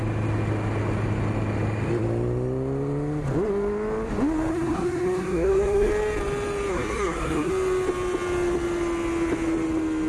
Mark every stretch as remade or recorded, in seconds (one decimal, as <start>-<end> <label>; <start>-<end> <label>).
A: 0.0-4.5 recorded; 4.5-5.9 remade; 5.9-6.7 recorded; 6.7-7.5 remade; 7.5-10.1 recorded